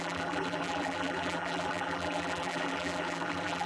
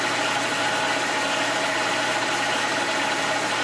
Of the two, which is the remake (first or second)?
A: first